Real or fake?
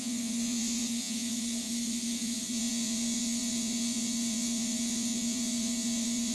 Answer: fake